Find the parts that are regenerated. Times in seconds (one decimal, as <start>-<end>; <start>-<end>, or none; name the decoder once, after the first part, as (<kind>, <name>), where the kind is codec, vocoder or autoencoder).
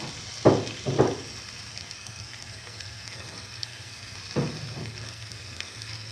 1.7-4.2 (codec, SNAC); 4.8-6.1